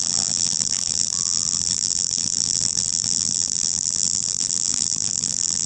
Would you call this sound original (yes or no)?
no